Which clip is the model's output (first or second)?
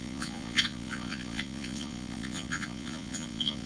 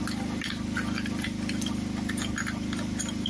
first